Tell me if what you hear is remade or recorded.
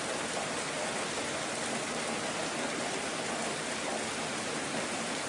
recorded